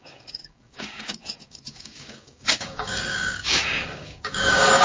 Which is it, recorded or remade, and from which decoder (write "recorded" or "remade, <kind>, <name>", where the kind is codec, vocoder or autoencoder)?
remade, codec, DAC